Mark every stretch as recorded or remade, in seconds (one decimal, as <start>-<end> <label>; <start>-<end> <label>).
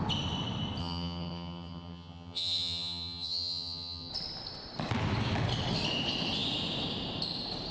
0.0-0.8 recorded; 0.8-4.1 remade; 4.1-7.7 recorded